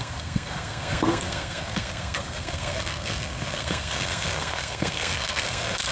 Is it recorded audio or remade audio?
remade